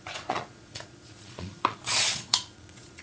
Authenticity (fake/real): fake